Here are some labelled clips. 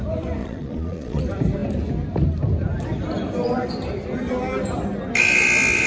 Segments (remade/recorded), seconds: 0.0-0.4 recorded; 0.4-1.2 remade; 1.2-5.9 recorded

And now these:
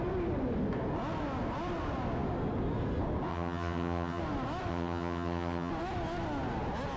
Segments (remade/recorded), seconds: 0.0-3.3 recorded; 3.3-4.2 remade; 4.2-4.7 recorded; 4.7-5.7 remade; 5.7-7.0 recorded

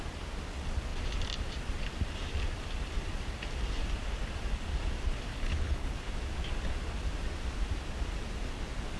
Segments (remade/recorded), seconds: 0.0-5.3 recorded; 5.3-6.1 remade; 6.1-9.0 recorded